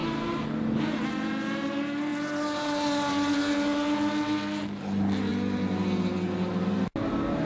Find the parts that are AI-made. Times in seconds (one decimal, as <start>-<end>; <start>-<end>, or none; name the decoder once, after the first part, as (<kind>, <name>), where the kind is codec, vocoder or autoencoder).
none